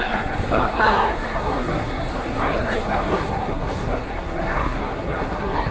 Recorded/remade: remade